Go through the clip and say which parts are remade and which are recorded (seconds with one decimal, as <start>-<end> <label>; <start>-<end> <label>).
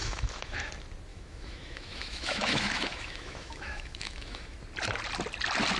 0.0-0.7 remade; 0.7-1.1 recorded; 1.1-4.6 remade; 4.6-5.8 recorded